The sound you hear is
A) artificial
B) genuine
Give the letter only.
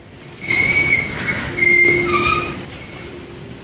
B